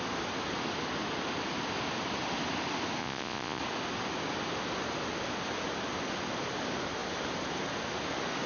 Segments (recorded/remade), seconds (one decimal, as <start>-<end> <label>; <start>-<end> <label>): 0.0-3.0 recorded; 3.0-3.6 remade; 3.6-8.5 recorded